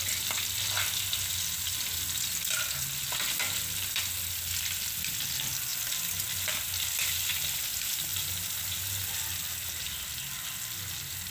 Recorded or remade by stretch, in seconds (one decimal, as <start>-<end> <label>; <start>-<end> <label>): 0.0-11.3 recorded